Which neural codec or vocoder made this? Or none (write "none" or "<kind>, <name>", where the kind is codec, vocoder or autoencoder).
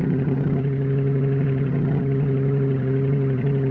vocoder, HiFi-GAN